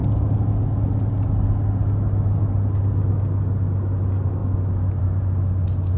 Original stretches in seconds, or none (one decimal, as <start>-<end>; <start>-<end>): 0.0-6.0